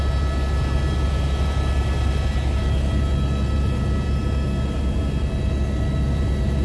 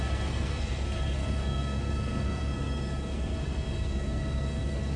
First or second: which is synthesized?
second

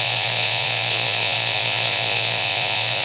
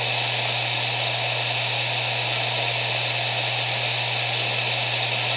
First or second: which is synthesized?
first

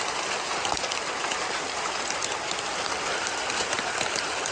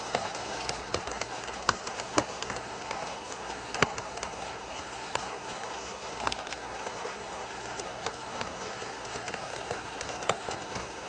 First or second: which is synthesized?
second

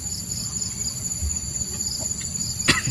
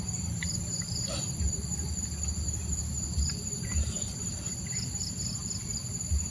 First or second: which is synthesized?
second